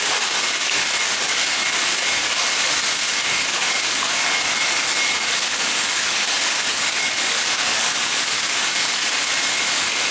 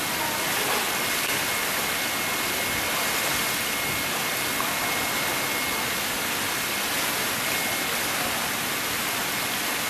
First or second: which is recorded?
second